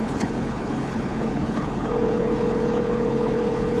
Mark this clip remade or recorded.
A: remade